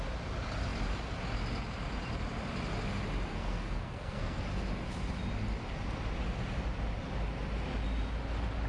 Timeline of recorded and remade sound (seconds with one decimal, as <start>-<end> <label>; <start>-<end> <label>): 0.0-3.3 recorded; 3.3-4.4 remade; 4.4-8.7 recorded